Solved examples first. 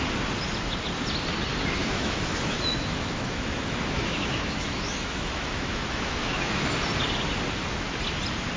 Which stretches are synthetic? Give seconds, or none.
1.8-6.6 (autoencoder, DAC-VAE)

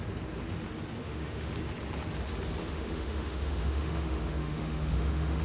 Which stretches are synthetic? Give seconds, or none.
1.0-1.5 (autoencoder, DAC-VAE); 2.6-5.4

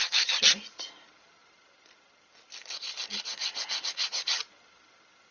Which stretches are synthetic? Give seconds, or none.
none

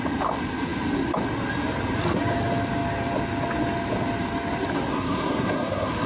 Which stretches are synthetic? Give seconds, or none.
4.9-6.1 (codec, SNAC)

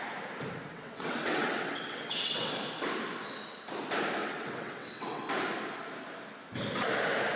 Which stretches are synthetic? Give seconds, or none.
0.7-2.5 (vocoder, WaveNeXt); 4.2-5.2